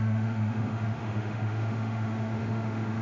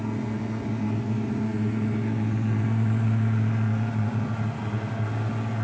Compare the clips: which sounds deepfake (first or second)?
first